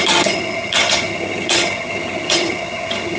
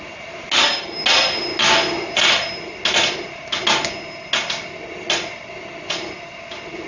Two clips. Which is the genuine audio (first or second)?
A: second